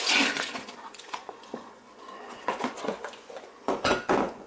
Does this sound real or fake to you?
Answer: fake